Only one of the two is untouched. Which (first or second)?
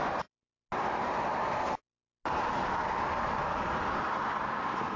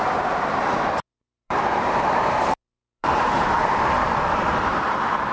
first